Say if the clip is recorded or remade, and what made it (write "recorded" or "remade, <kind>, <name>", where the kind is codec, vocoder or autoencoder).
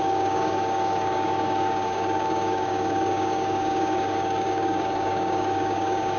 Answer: remade, codec, DAC